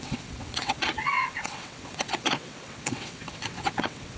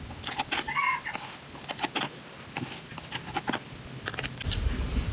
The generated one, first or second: first